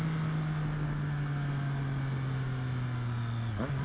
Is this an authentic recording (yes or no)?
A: yes